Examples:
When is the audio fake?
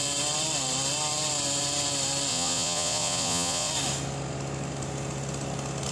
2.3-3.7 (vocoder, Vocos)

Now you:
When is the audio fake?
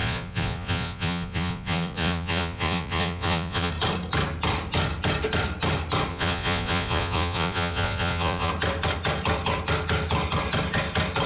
0.0-3.7 (vocoder, Vocos); 6.1-8.5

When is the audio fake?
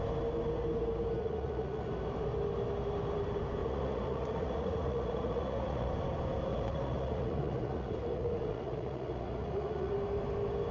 1.2-1.9 (vocoder, Vocos); 3.6-5.9; 6.5-9.9